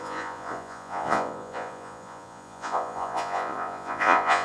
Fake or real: fake